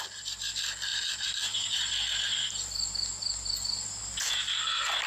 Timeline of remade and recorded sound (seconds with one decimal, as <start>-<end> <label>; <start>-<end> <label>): 0.0-5.1 recorded